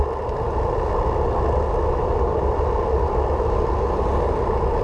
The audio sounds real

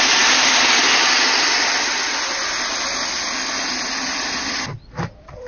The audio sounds real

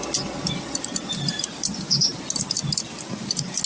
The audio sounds real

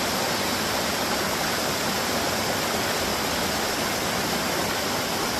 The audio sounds real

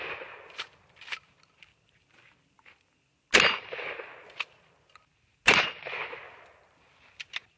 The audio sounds real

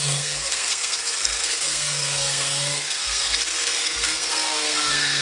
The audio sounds fake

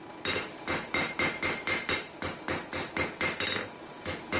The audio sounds real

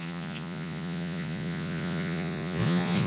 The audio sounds fake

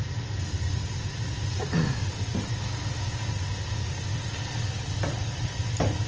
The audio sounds real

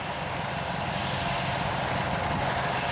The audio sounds real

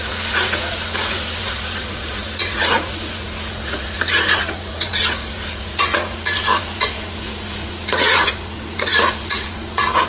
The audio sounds fake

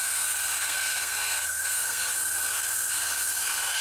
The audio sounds fake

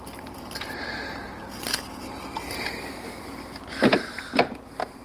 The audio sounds fake